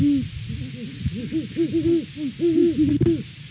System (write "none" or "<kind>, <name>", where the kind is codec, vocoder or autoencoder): none